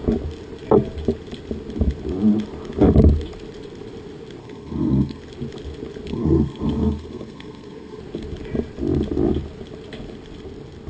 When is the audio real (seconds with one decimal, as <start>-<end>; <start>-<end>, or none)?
0.0-4.4; 5.2-6.1; 8.0-10.9